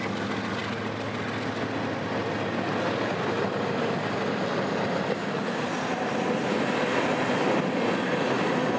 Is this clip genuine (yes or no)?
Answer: yes